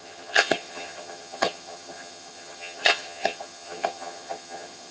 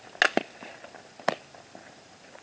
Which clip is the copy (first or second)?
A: first